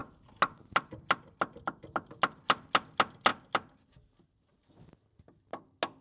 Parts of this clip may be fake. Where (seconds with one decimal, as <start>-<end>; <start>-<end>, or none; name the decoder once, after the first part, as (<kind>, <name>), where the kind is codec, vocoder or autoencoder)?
none